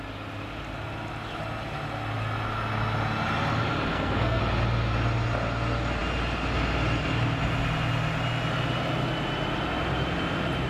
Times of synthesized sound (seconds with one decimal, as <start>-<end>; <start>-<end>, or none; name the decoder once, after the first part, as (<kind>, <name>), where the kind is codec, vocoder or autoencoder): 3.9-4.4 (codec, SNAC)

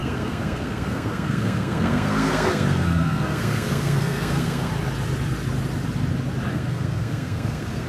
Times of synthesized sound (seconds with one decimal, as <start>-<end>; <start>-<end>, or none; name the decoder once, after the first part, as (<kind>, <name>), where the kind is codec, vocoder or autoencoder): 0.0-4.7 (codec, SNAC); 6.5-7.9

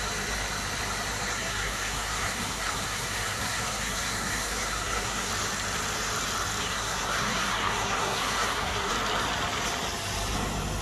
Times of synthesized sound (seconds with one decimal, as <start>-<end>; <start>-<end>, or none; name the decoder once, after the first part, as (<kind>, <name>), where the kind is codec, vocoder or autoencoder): 1.3-5.3 (codec, SNAC); 6.6-8.9